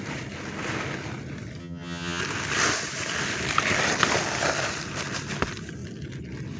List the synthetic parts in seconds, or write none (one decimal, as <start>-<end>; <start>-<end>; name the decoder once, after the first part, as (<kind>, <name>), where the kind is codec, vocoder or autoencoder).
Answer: 1.6-2.2 (vocoder, HiFi-GAN)